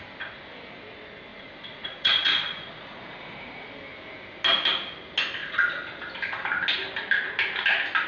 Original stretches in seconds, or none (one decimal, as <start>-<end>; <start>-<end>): 0.0-1.3; 3.7-5.4; 6.0-8.1